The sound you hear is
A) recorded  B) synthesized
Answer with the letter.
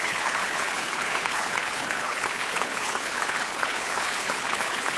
B